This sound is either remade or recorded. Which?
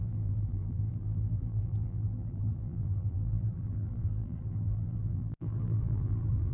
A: remade